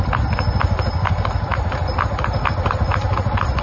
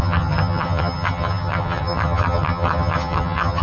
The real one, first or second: first